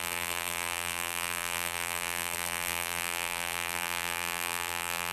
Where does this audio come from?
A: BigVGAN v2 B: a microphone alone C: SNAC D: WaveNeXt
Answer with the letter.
A